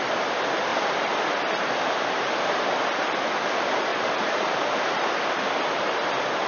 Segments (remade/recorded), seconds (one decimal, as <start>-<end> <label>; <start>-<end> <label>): 0.0-0.7 recorded; 0.7-2.7 remade; 2.7-3.9 recorded; 3.9-5.2 remade; 5.2-6.5 recorded